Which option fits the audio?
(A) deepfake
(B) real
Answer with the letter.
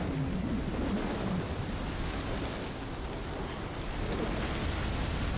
B